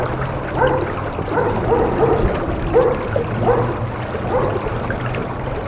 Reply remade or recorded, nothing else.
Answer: recorded